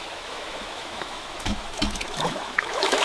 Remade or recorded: remade